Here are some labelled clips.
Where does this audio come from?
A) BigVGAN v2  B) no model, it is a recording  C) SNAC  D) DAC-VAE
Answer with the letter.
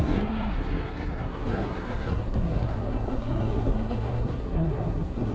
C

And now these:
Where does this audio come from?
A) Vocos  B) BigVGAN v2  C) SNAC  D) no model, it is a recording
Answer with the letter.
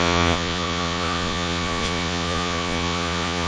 A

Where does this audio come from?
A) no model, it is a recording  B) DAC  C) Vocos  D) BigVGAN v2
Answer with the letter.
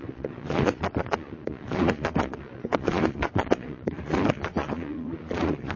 C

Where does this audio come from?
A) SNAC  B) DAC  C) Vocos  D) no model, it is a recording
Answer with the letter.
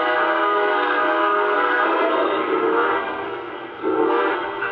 A